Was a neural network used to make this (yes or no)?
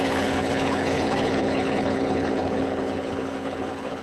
yes